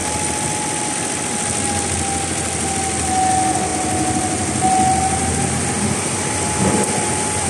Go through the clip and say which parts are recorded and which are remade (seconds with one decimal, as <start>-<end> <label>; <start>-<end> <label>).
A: 0.0-7.5 recorded